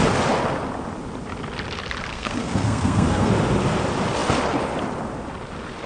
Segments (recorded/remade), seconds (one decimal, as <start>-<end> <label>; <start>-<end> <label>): 0.0-2.1 recorded; 2.1-3.3 remade; 3.3-5.9 recorded